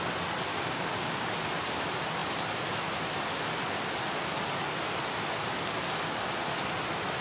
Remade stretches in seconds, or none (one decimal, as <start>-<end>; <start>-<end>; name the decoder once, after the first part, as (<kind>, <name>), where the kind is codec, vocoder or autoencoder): 0.5-1.3 (codec, DAC)